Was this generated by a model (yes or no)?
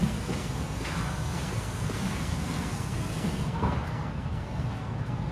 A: yes